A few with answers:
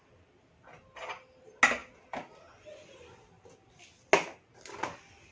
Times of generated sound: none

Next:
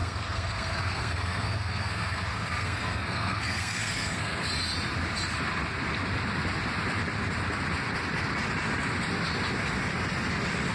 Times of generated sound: 0.0-4.5 (codec, SNAC)

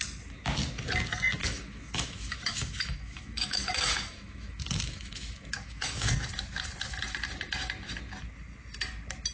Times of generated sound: 1.4-6.1 (autoencoder, DAC-VAE)

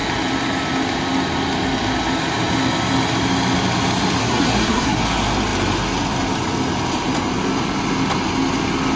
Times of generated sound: 4.2-5.0 (codec, SNAC)

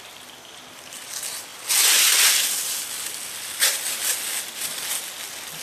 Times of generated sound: none